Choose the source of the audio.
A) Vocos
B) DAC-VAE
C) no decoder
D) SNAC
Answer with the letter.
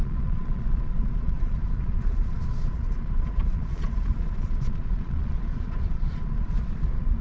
A